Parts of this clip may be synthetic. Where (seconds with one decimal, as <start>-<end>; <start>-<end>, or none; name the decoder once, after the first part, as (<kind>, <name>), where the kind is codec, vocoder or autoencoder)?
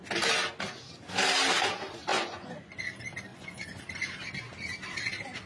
2.1-2.8 (vocoder, Vocos); 3.3-3.8